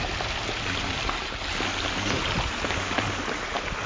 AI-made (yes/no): no